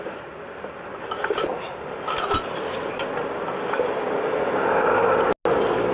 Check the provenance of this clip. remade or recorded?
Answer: recorded